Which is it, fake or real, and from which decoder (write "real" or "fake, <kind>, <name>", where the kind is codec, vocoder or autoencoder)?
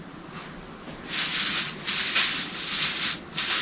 real